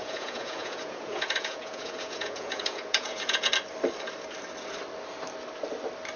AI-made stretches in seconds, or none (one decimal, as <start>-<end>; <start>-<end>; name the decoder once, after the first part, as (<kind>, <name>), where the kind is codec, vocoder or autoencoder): 0.0-3.5 (vocoder, Vocos)